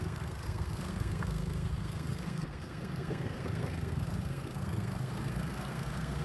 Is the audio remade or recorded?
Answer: remade